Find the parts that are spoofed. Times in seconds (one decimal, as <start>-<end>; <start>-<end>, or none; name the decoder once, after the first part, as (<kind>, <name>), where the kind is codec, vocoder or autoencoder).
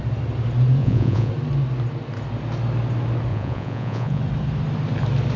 0.8-1.3 (vocoder, Vocos); 3.3-4.2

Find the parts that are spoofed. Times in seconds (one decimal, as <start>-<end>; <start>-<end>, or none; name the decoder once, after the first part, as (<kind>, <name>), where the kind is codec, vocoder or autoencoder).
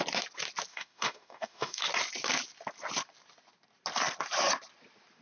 0.7-1.8 (autoencoder, DAC-VAE)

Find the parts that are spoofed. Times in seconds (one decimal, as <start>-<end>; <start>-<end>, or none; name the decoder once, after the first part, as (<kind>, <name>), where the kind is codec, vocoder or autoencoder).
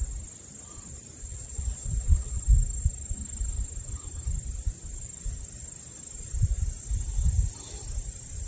1.3-2.4 (vocoder, WaveNeXt)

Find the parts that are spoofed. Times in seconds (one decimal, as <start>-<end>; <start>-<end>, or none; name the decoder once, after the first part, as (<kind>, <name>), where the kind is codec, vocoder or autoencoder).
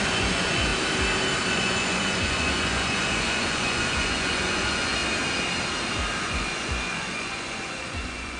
0.0-0.7 (vocoder, Vocos); 1.5-5.0; 6.2-8.4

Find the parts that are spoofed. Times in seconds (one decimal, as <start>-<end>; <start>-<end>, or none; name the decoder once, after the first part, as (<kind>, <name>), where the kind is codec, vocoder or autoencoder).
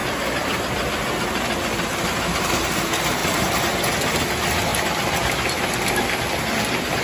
none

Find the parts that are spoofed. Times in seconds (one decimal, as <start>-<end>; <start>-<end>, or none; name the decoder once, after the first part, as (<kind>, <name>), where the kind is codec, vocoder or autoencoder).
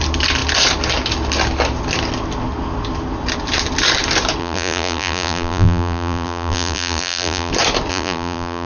4.4-7.5 (vocoder, BigVGAN v2); 7.9-8.7